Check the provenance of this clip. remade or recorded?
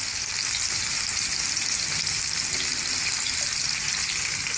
recorded